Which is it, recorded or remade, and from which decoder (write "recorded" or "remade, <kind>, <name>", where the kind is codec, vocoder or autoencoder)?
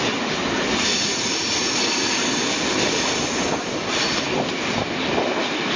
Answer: recorded